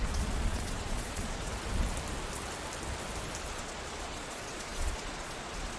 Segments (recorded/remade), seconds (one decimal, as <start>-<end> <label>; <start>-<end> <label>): 0.0-1.5 remade; 1.5-3.6 recorded; 3.6-5.8 remade